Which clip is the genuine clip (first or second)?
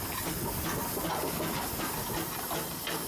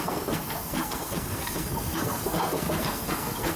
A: first